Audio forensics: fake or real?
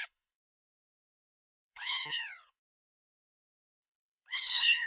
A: fake